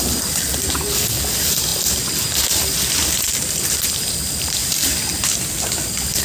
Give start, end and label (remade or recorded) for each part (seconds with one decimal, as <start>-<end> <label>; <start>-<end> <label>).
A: 0.0-4.6 remade; 4.6-5.5 recorded; 5.5-6.2 remade